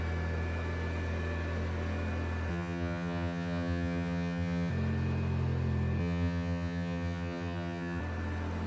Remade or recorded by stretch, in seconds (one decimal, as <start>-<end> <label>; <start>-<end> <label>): 0.0-2.5 recorded; 2.5-4.7 remade; 4.7-6.0 recorded; 6.0-8.0 remade; 8.0-8.7 recorded